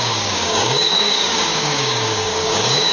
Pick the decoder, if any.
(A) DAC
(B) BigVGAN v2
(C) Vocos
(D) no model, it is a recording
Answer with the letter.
A